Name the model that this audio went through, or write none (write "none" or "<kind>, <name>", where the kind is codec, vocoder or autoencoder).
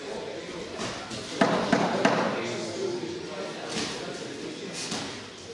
none